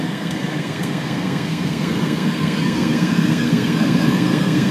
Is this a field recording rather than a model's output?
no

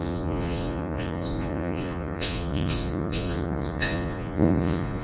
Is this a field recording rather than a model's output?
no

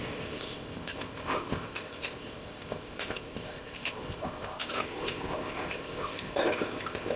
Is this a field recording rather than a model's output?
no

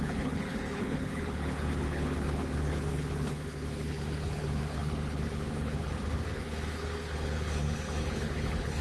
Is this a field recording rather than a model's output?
no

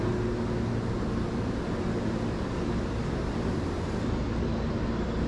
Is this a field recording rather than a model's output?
yes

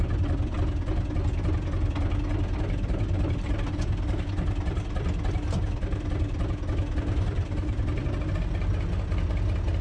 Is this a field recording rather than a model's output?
yes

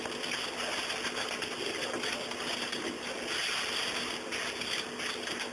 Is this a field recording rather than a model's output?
no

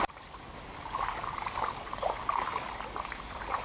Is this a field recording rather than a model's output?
yes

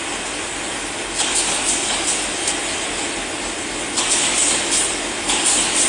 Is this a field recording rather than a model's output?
yes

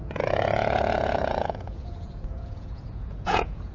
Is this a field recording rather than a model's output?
no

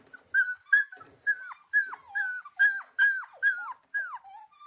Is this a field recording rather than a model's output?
yes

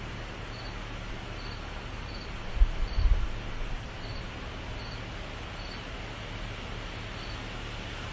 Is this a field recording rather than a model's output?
yes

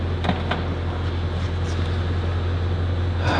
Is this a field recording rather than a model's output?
yes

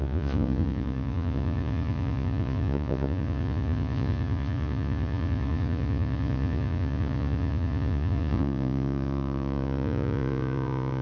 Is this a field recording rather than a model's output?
no